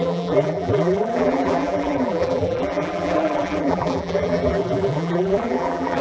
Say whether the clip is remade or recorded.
remade